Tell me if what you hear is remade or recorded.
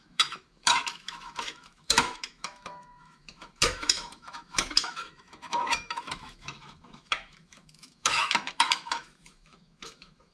remade